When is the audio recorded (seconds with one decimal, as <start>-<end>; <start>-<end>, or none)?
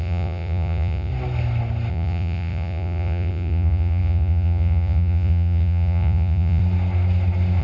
1.1-1.9; 6.6-7.6